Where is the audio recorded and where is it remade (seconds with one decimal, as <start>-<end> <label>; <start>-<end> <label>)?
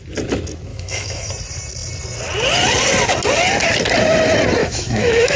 0.0-0.7 recorded; 0.7-1.3 remade; 1.3-4.6 recorded; 4.6-5.4 remade